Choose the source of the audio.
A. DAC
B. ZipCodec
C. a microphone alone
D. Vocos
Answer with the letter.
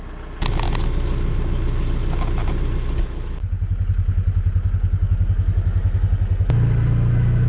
C